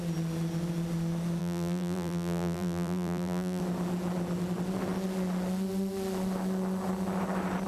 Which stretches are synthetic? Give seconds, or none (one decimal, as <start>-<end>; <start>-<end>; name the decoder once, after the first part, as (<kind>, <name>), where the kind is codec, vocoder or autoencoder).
1.4-3.6 (vocoder, BigVGAN v2)